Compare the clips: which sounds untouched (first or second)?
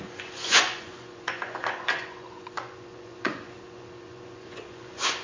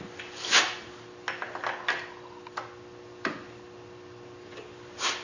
second